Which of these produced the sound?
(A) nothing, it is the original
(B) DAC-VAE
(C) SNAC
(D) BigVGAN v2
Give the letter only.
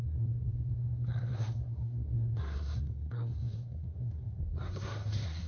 C